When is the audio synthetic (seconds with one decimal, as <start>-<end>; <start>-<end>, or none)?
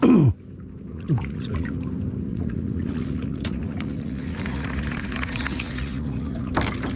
0.9-1.8; 2.3-6.5